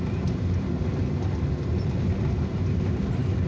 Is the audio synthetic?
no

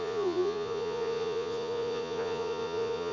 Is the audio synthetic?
yes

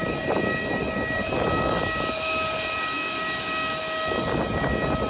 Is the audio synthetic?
no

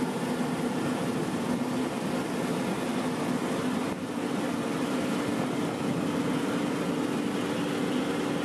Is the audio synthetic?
no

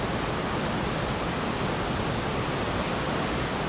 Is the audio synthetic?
no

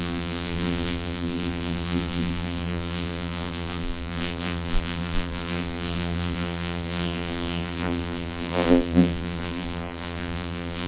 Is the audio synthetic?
yes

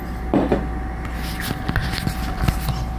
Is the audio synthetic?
no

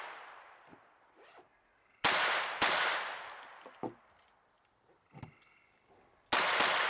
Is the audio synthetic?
no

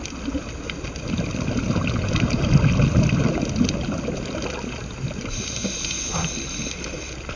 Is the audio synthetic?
no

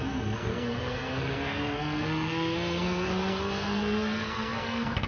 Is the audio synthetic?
yes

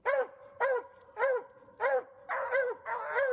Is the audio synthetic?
no